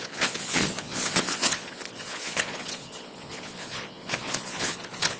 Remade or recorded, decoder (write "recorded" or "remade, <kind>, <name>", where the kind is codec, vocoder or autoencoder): remade, vocoder, Vocos